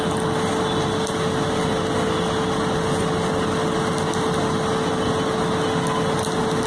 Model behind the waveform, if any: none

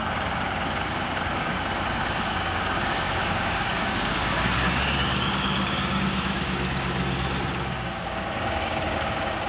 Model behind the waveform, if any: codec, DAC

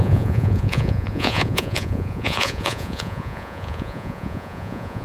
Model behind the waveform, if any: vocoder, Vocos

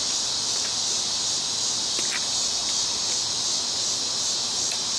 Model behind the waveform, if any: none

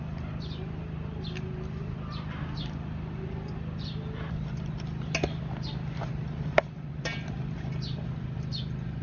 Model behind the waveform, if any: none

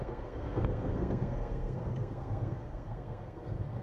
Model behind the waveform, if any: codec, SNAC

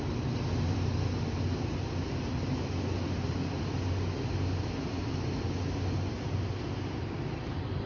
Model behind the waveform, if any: none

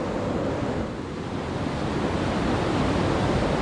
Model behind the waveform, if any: none